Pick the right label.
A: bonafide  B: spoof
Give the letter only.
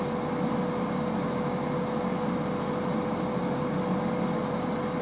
A